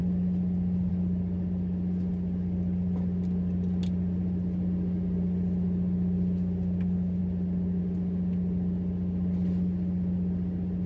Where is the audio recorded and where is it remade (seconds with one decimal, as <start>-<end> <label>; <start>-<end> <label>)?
0.0-10.9 recorded